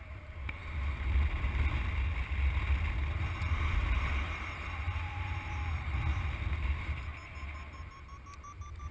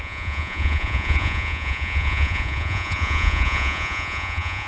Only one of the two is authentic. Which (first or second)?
first